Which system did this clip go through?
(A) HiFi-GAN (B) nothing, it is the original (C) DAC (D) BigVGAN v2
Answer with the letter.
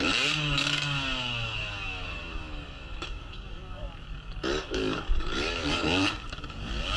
C